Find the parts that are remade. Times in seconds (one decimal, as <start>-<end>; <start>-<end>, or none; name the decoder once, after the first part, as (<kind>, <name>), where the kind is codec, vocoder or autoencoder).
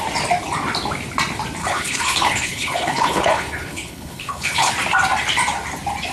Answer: 1.6-4.7 (codec, HILCodec)